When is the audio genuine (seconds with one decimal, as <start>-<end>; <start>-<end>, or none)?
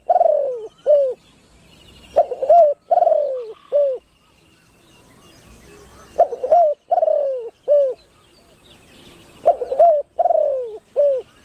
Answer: 0.0-11.4